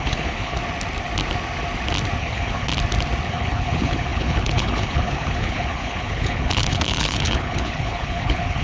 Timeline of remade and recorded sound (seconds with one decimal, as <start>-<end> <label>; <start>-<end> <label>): 0.0-0.6 remade; 0.6-2.2 recorded; 2.2-2.7 remade; 2.7-3.3 recorded; 3.3-8.6 remade